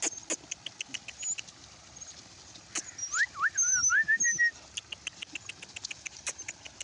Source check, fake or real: real